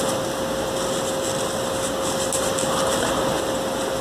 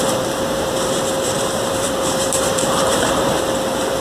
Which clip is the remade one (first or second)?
second